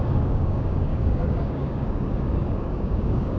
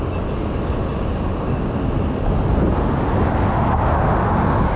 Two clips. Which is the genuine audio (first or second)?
second